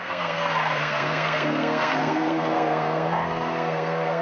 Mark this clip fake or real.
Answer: fake